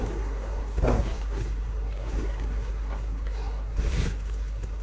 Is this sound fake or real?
fake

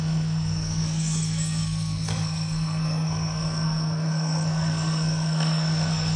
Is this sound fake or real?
fake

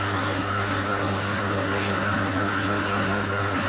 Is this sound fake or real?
fake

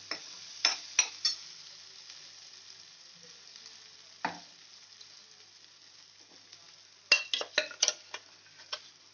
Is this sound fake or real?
real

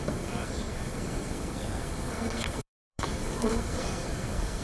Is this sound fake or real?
fake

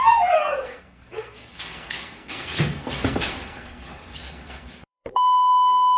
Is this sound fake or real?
fake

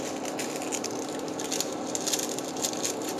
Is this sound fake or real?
real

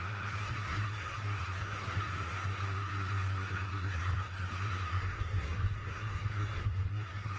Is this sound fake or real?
fake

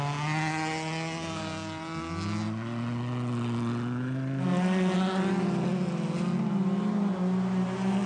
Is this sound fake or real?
real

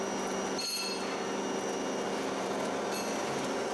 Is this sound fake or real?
real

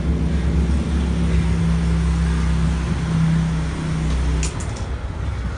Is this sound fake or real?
real